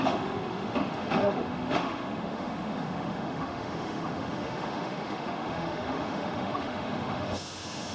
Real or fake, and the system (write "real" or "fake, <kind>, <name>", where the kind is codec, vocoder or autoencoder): fake, autoencoder, DAC-VAE